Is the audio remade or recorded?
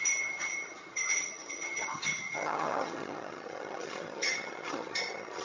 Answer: remade